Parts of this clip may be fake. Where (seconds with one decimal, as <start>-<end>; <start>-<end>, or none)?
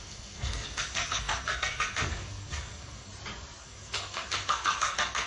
0.0-3.1; 3.6-5.3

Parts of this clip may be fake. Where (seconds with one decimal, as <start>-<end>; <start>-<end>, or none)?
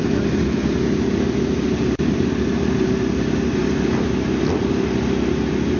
none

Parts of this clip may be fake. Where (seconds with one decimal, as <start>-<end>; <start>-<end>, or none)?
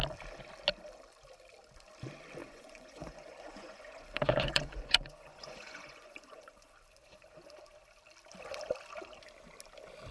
2.4-6.7